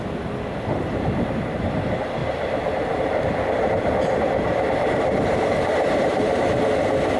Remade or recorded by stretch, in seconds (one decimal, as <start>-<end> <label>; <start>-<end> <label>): 0.0-2.2 recorded; 2.2-6.5 remade; 6.5-7.2 recorded

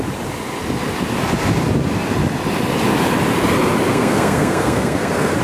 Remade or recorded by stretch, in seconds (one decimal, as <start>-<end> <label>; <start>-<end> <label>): 0.0-3.9 recorded; 3.9-5.4 remade

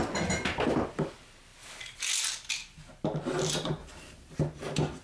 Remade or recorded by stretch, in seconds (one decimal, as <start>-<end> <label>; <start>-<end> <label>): 0.0-5.0 recorded

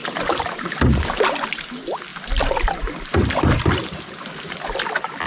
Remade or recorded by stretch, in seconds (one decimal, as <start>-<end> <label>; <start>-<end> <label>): 0.0-5.3 recorded

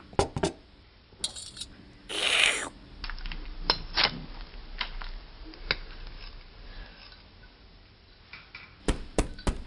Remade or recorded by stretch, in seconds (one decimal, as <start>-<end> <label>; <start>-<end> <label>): 0.0-9.7 recorded